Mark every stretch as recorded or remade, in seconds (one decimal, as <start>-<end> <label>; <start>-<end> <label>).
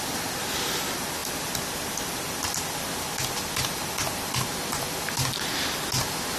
0.0-6.4 recorded